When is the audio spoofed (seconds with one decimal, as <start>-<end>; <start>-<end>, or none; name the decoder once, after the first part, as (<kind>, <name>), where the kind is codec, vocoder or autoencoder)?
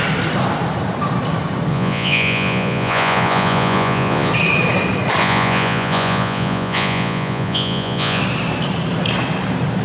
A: 1.7-4.3 (vocoder, Vocos); 5.2-8.2